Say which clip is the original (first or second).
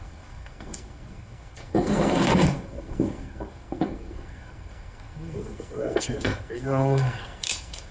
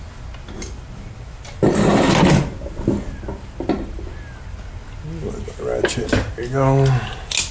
second